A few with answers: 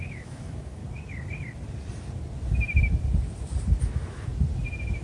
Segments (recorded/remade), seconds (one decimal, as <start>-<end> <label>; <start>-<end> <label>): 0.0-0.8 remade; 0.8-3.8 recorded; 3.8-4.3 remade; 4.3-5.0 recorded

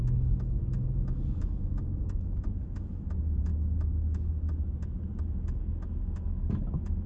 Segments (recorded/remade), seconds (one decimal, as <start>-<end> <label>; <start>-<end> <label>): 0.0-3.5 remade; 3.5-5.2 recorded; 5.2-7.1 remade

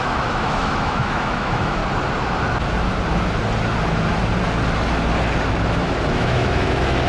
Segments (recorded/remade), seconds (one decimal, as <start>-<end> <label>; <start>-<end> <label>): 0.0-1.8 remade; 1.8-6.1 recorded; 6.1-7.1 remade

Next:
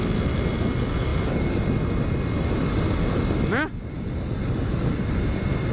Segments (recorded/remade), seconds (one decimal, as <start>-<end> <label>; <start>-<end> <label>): 0.0-5.7 recorded